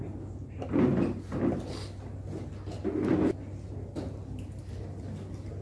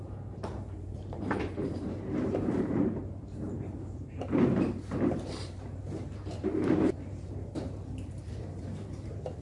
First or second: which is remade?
second